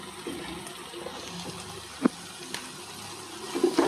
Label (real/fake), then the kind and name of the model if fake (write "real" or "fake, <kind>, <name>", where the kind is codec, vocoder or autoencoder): real